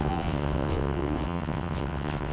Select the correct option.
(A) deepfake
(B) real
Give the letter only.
A